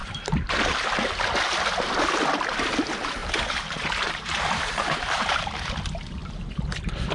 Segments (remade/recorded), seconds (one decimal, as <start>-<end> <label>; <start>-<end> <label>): 0.0-0.5 remade; 0.5-3.2 recorded; 3.2-5.8 remade; 5.8-7.1 recorded